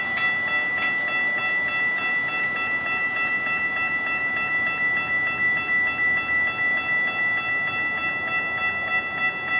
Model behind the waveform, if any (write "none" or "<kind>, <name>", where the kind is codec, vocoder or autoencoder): none